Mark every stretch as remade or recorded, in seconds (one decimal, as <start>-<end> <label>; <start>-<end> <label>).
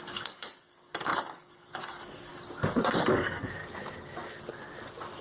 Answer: 0.0-2.3 remade; 2.3-2.9 recorded; 2.9-3.6 remade; 3.6-5.2 recorded